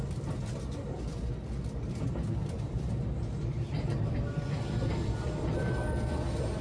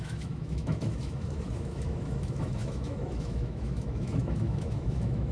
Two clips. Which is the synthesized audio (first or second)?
second